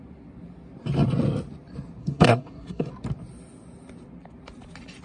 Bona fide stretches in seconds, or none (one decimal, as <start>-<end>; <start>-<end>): 0.0-2.0; 2.9-5.0